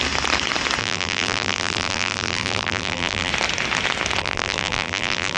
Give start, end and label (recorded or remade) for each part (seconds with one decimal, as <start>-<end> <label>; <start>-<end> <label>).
0.0-0.8 recorded; 0.8-3.3 remade; 3.3-4.2 recorded; 4.2-5.4 remade